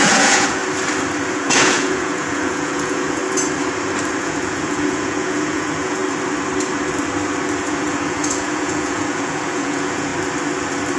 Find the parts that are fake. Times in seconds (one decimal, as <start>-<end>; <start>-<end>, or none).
0.0-0.6; 1.3-3.2; 4.2-6.0; 7.6-10.1